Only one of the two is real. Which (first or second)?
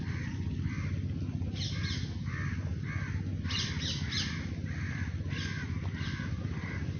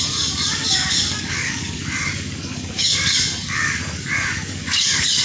first